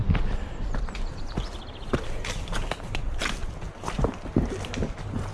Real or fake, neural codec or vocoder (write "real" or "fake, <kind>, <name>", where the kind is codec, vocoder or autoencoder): real